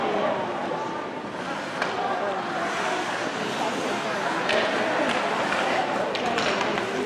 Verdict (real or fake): real